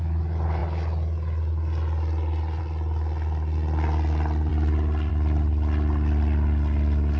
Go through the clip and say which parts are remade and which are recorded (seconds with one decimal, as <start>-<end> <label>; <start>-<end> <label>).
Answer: 0.0-7.2 recorded